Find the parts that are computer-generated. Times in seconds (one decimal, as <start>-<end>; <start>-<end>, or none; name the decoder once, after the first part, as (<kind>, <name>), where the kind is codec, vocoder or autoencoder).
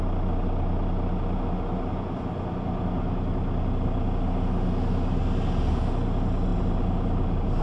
none